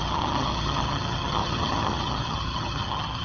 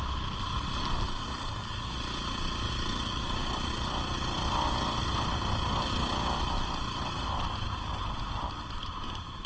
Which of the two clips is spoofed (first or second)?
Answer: first